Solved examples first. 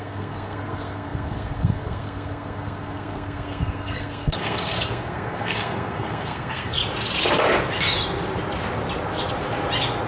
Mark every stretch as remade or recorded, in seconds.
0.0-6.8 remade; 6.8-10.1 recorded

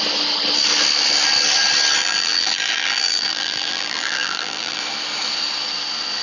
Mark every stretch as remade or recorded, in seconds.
0.0-2.0 recorded; 2.0-4.8 remade; 4.8-6.2 recorded

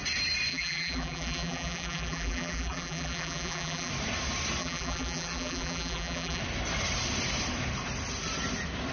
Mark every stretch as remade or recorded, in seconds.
0.0-0.5 recorded; 0.5-3.9 remade; 3.9-4.6 recorded; 4.6-6.4 remade; 6.4-8.9 recorded

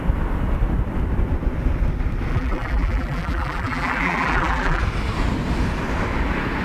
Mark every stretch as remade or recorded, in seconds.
0.0-2.3 recorded; 2.3-4.8 remade; 4.8-6.6 recorded

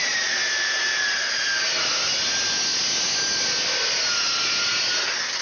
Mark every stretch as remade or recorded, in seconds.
0.0-5.4 recorded

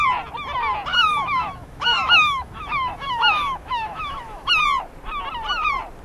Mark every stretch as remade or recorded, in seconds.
0.0-0.9 recorded; 0.9-4.5 remade; 4.5-6.0 recorded

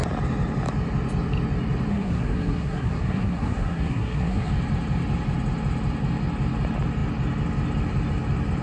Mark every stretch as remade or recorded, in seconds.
0.0-1.9 recorded; 1.9-4.5 remade; 4.5-8.6 recorded

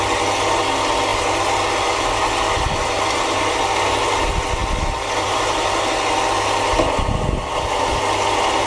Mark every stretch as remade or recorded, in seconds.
0.0-4.6 recorded; 4.6-5.4 remade; 5.4-8.7 recorded